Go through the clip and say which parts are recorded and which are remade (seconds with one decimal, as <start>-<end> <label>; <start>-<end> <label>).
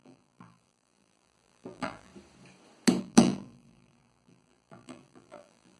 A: 0.0-2.1 remade; 2.1-3.0 recorded; 3.0-5.8 remade